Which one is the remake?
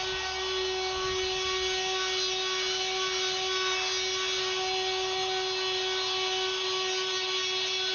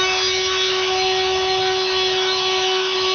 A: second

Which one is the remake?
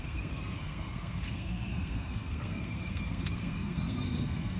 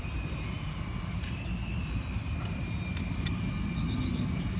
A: first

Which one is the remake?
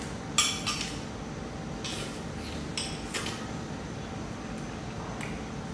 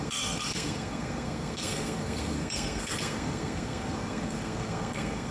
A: second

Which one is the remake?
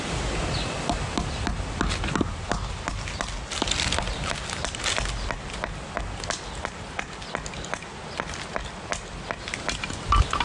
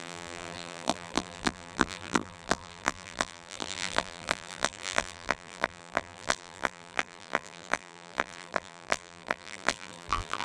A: second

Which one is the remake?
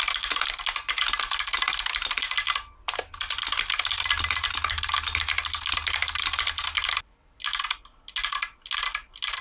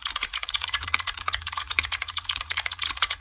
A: second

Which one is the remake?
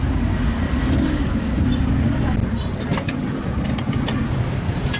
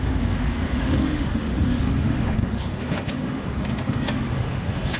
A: second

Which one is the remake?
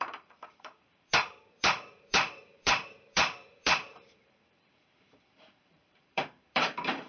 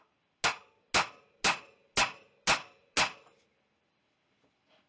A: first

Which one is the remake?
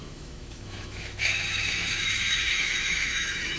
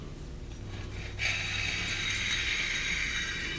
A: first